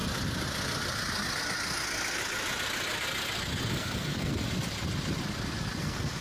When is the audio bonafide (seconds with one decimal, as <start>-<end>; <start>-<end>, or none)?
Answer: 0.0-3.7; 4.3-5.8